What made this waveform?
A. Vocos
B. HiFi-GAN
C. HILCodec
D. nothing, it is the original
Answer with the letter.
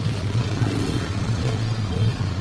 A